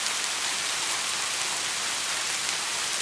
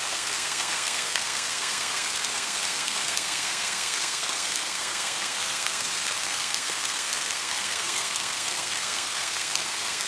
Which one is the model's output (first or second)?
second